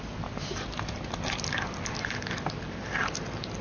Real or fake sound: real